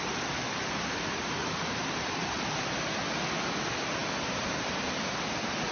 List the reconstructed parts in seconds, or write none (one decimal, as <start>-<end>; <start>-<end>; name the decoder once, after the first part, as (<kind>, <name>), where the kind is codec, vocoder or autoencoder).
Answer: 1.4-2.5 (vocoder, BigVGAN v2)